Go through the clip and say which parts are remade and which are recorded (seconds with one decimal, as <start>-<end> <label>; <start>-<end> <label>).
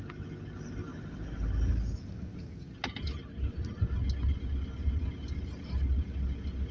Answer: 0.0-6.7 recorded